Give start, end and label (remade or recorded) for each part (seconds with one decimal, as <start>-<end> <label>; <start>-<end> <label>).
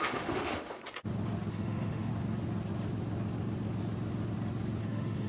0.0-0.8 remade; 0.8-1.5 recorded; 1.5-2.1 remade; 2.1-4.8 recorded; 4.8-5.3 remade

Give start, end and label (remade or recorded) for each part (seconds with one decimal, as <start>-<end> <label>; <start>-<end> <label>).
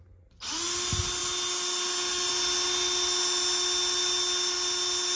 0.0-5.2 recorded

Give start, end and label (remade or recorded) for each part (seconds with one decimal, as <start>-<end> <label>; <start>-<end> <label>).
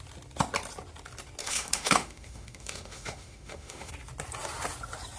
0.0-1.4 recorded; 1.4-3.9 remade; 3.9-5.2 recorded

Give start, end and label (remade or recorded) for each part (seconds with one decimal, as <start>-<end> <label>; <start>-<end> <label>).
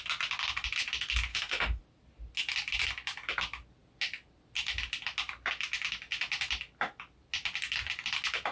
0.0-1.3 recorded; 1.3-1.8 remade; 1.8-8.5 recorded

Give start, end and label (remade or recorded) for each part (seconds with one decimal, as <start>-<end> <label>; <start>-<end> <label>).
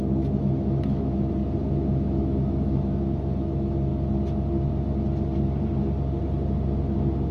0.0-3.9 remade; 3.9-7.3 recorded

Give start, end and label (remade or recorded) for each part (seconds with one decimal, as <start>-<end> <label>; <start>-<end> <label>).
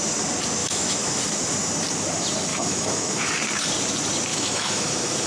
0.0-0.6 recorded; 0.6-1.2 remade; 1.2-2.5 recorded; 2.5-3.3 remade; 3.3-4.3 recorded; 4.3-5.3 remade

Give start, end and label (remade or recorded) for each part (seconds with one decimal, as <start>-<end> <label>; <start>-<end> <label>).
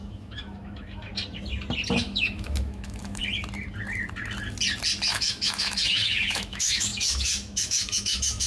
0.0-1.1 remade; 1.1-2.0 recorded; 2.0-3.2 remade; 3.2-5.1 recorded; 5.1-8.5 remade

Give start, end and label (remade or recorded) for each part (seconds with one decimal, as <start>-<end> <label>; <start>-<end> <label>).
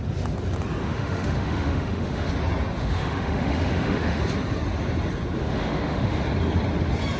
0.0-0.8 recorded; 0.8-2.3 remade; 2.3-2.8 recorded; 2.8-4.2 remade; 4.2-5.4 recorded; 5.4-6.2 remade; 6.2-7.2 recorded